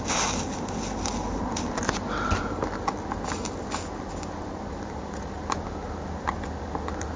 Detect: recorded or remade recorded